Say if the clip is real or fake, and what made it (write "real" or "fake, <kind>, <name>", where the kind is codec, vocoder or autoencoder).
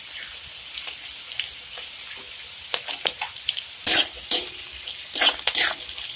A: real